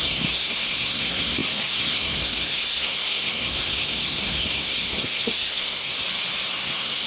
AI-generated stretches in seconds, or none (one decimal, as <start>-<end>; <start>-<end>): 0.0-5.9; 6.5-7.1